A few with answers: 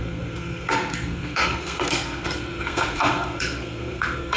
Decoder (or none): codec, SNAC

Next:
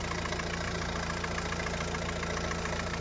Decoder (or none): none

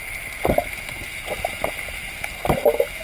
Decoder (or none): none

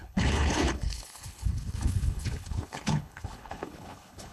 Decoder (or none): codec, HILCodec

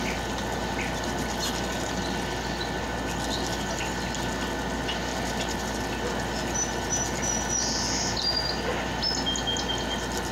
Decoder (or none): none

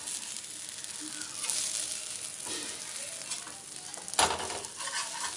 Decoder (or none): none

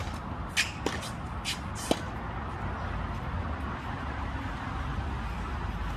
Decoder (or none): none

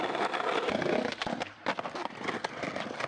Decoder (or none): none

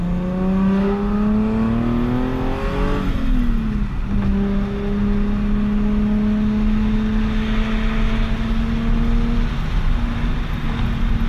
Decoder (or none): none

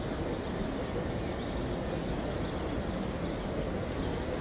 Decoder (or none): none